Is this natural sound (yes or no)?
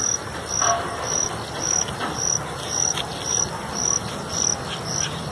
yes